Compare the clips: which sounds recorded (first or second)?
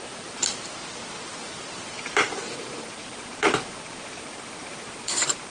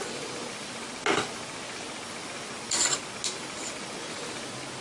second